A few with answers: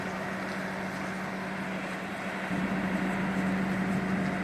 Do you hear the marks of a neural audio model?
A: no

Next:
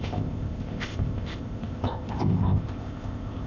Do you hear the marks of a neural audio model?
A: yes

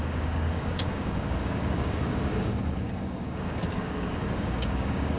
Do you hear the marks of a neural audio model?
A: yes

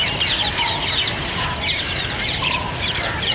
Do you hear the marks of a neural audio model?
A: no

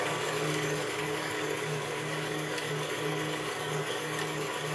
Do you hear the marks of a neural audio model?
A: yes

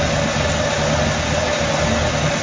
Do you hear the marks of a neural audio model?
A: no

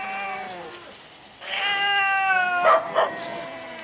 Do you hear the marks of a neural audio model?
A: no